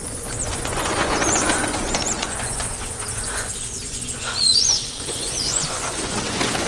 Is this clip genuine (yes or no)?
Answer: no